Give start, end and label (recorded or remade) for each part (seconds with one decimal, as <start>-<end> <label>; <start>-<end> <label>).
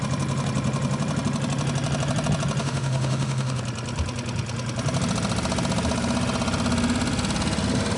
0.0-2.6 recorded; 2.6-3.6 remade; 3.6-8.0 recorded